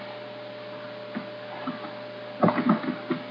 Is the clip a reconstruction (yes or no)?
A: no